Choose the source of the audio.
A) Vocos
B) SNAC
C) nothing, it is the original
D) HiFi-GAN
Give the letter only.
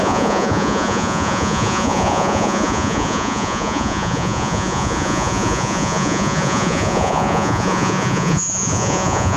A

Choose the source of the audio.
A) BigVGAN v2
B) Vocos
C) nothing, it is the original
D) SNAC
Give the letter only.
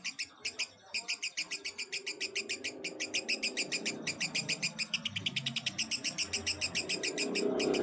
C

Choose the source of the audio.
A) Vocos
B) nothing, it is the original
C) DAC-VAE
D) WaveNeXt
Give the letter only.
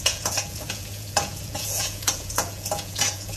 A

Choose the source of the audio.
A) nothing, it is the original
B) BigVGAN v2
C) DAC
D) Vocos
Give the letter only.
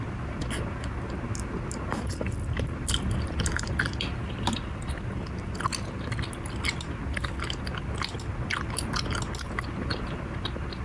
A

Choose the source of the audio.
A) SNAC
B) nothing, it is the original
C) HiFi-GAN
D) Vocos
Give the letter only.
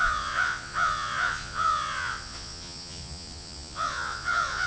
D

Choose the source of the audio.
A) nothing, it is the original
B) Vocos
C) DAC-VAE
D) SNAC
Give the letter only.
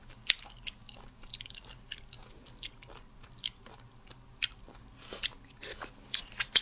A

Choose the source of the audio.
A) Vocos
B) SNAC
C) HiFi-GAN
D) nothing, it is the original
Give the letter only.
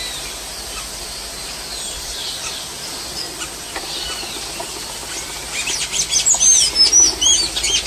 D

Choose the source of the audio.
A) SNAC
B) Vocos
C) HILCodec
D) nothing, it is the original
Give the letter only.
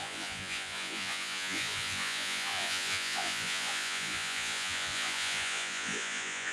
B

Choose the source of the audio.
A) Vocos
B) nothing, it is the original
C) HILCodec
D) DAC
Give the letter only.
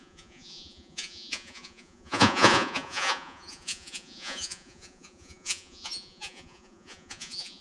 A